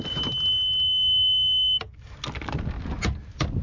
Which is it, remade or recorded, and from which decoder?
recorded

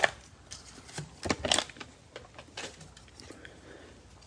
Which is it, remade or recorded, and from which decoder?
recorded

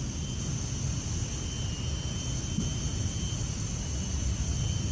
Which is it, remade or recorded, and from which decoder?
recorded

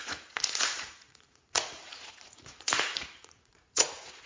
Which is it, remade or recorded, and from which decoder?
remade, vocoder, Vocos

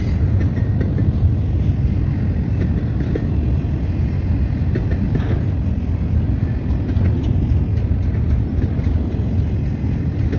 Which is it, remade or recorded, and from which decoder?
recorded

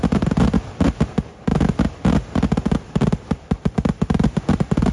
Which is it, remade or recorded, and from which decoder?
recorded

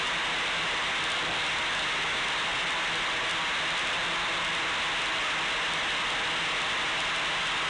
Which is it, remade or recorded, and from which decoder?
recorded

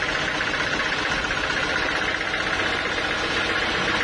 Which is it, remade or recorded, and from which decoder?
recorded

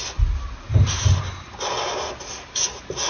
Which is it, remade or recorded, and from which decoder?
recorded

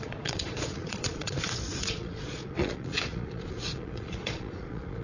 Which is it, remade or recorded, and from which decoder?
remade, vocoder, Vocos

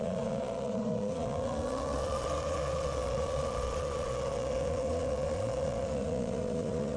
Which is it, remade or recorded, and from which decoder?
remade, vocoder, Vocos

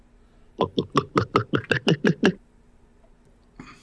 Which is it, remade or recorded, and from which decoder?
recorded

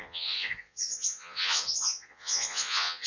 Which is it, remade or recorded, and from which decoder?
remade, vocoder, Vocos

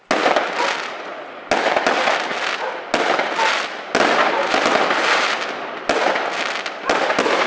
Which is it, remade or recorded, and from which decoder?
recorded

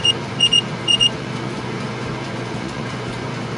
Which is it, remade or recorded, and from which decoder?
remade, vocoder, Vocos